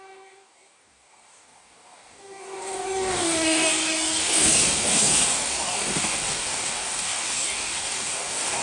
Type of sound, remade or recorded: remade